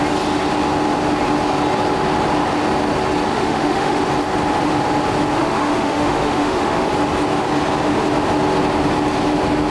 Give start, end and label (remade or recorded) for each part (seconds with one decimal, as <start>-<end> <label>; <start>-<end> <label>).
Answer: 0.0-3.3 recorded; 3.3-4.0 remade; 4.0-5.3 recorded; 5.3-6.9 remade; 6.9-9.7 recorded